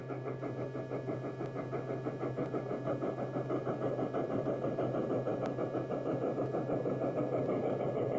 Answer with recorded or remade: recorded